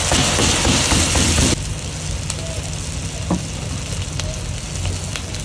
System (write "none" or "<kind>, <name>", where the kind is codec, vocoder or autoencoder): none